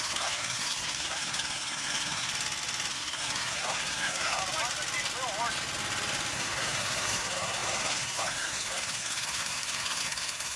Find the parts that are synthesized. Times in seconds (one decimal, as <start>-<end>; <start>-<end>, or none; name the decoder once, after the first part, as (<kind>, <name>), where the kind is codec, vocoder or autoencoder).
0.0-2.3 (codec, SNAC); 2.9-4.4; 6.3-10.6